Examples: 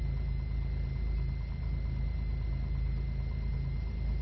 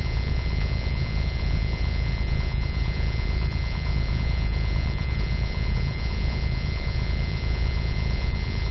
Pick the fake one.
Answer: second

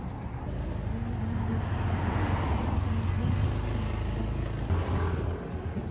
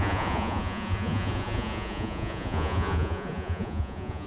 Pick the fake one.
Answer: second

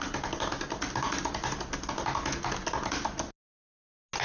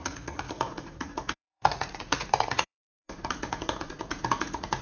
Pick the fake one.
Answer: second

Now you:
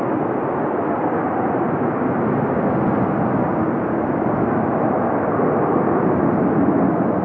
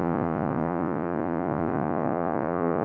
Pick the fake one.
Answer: second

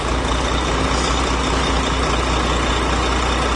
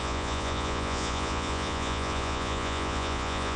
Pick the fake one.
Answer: second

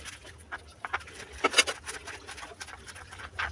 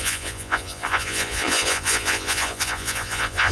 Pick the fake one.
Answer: second